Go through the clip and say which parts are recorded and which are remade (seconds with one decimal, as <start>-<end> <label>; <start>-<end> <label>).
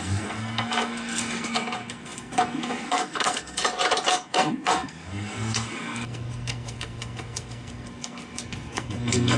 0.0-3.6 remade; 3.6-4.1 recorded; 4.1-9.4 remade